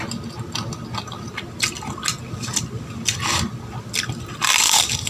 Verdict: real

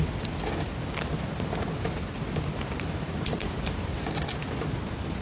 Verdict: real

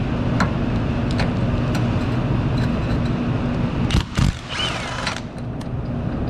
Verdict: real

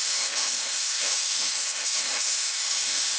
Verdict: fake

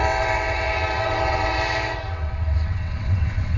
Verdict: fake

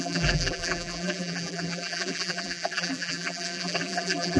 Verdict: fake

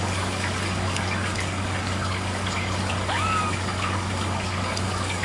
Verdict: fake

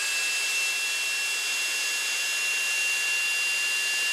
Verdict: real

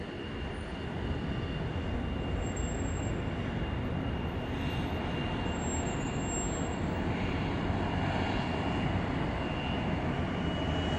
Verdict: real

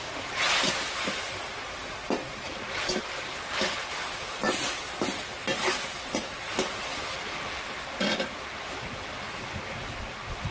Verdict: real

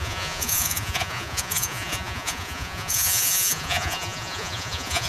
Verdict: fake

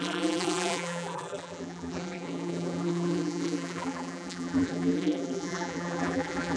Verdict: fake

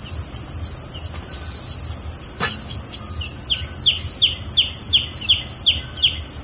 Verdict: real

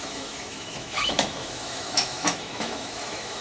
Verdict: fake